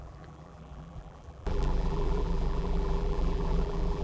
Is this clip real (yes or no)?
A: no